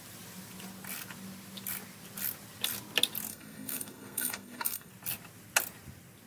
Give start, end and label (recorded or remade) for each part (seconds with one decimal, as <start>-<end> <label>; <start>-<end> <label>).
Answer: 0.0-3.3 recorded; 3.3-4.9 remade; 4.9-6.3 recorded